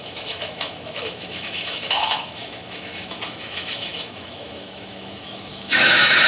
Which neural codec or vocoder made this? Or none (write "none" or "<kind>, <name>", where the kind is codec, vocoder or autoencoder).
autoencoder, DAC-VAE